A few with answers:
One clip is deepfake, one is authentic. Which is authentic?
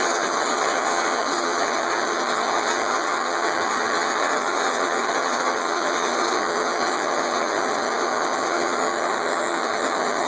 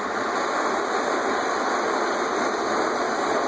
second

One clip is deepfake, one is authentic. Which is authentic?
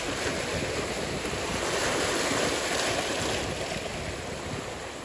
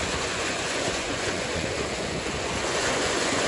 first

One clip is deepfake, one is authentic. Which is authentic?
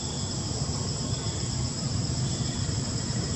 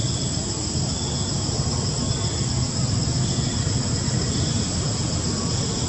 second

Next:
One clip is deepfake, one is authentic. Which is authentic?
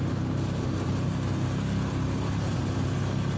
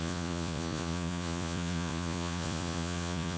first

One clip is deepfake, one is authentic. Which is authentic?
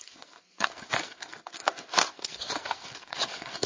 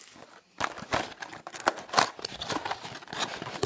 second